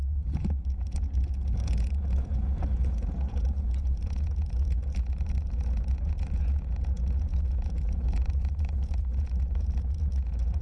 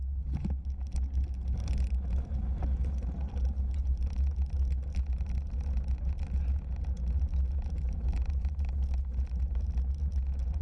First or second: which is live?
second